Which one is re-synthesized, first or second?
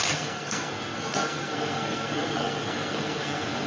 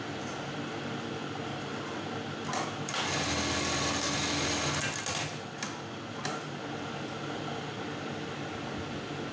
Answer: first